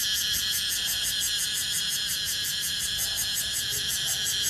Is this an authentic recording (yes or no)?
yes